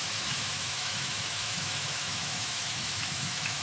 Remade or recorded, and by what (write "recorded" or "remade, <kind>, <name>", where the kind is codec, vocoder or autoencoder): remade, autoencoder, DAC-VAE